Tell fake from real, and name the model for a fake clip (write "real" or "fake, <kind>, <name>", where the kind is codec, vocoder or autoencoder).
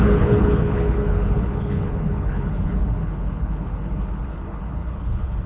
fake, codec, HILCodec